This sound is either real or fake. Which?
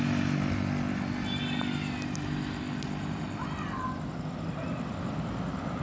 real